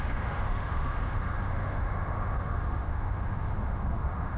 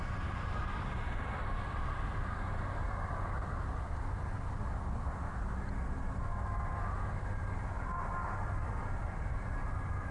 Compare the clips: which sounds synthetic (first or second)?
first